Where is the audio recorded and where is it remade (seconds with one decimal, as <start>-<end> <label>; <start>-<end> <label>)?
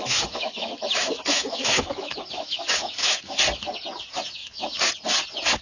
0.0-3.4 remade; 3.4-4.4 recorded; 4.4-4.9 remade; 4.9-5.6 recorded